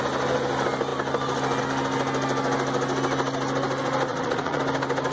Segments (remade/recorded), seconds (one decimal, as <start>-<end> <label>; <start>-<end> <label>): 0.0-4.1 recorded; 4.1-4.6 remade; 4.6-5.1 recorded